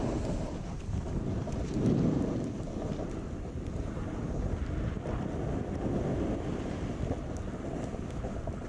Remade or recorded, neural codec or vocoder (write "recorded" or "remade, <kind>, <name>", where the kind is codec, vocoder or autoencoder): recorded